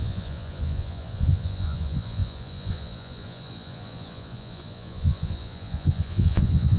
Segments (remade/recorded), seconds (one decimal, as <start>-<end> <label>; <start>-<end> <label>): 0.0-6.8 remade